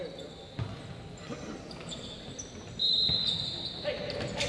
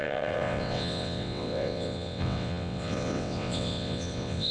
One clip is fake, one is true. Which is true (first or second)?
first